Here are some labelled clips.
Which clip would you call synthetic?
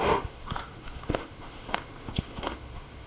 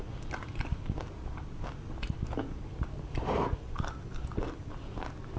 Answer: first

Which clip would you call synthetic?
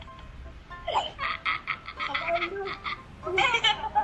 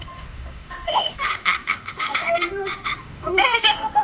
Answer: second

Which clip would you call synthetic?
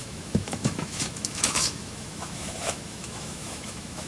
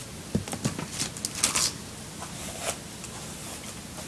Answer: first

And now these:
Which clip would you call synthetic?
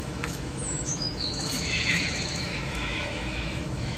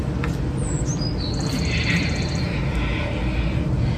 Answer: first